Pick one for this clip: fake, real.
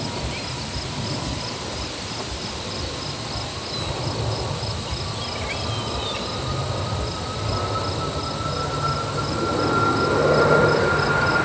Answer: real